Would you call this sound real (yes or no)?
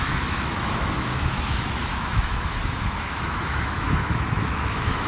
no